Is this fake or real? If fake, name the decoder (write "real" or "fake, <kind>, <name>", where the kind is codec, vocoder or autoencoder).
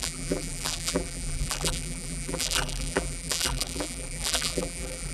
fake, vocoder, BigVGAN v2